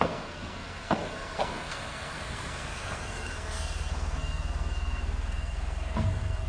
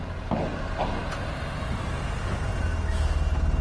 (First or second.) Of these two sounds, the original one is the second